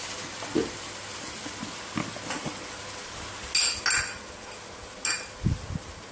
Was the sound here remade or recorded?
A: recorded